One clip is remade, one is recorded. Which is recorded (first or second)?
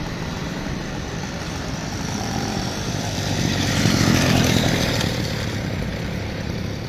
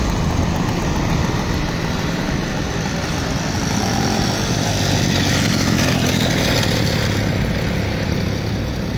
second